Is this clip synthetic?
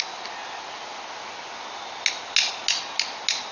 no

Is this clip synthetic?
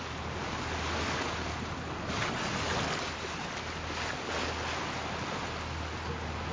no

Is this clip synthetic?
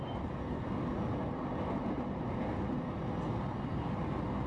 no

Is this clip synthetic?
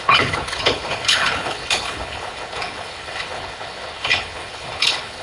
yes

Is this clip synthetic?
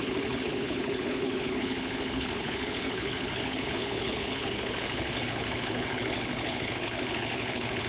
yes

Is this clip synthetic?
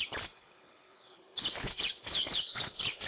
yes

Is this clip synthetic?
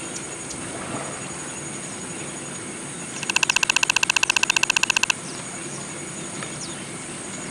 no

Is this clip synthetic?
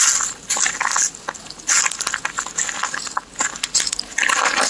no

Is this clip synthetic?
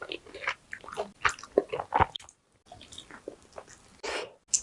no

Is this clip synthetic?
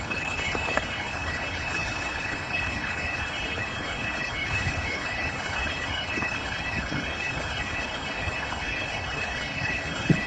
yes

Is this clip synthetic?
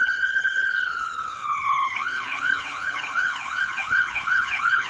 yes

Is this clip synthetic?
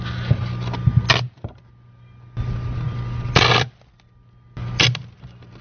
no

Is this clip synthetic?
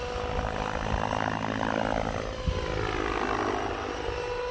no